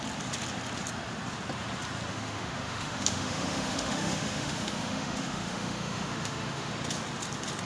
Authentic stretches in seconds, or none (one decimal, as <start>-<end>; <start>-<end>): 0.0-2.1; 6.7-7.7